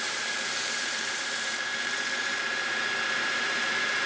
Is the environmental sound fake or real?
fake